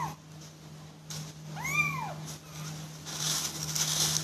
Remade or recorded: recorded